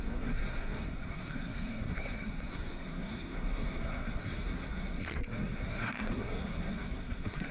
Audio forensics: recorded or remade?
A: remade